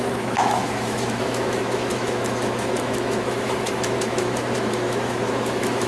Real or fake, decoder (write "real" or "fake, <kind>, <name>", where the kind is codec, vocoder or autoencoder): fake, autoencoder, DAC-VAE